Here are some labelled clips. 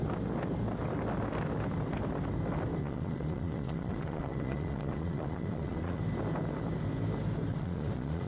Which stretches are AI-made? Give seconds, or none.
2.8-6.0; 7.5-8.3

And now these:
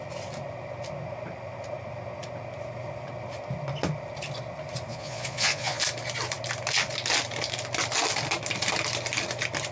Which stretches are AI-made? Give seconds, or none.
4.9-5.8

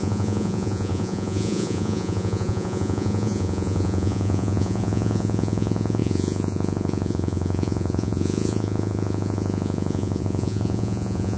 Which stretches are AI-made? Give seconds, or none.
0.0-11.4

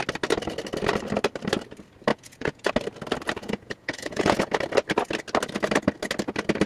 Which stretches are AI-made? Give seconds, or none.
2.1-2.7; 3.4-4.5

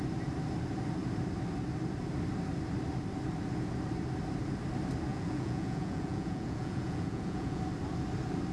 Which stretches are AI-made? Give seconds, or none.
5.1-7.6

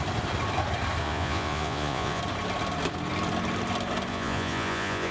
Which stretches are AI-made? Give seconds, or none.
1.0-2.2; 4.1-5.1